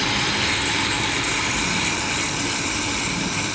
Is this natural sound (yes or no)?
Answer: yes